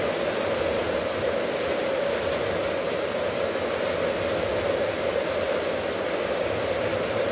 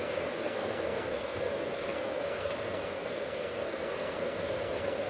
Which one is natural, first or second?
first